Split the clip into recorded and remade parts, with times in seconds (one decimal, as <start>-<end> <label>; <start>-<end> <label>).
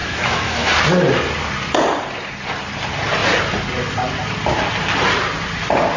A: 0.0-0.7 remade; 0.7-6.0 recorded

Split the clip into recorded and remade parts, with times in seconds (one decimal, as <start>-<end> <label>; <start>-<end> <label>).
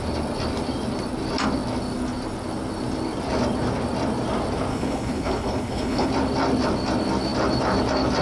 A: 0.0-4.7 recorded; 4.7-6.1 remade; 6.1-8.2 recorded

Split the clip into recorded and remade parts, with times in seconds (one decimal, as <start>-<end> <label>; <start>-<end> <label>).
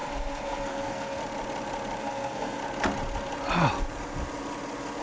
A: 0.0-1.2 remade; 1.2-2.0 recorded; 2.0-2.6 remade; 2.6-5.0 recorded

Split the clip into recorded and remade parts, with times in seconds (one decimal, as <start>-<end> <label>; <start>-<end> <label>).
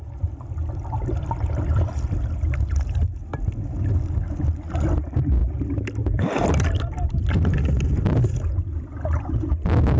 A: 0.0-10.0 recorded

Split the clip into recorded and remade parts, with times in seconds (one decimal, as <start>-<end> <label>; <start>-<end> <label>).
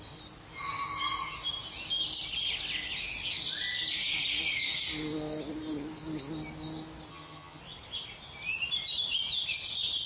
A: 0.0-7.1 recorded; 7.1-7.6 remade; 7.6-10.1 recorded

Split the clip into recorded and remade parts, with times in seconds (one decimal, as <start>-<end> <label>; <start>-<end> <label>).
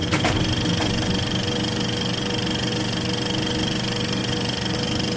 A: 0.0-5.2 recorded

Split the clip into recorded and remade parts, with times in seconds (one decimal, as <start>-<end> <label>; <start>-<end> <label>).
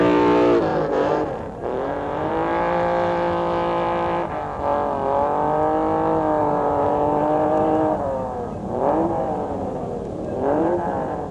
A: 0.0-0.7 recorded; 0.7-2.3 remade; 2.3-6.4 recorded; 6.4-11.3 remade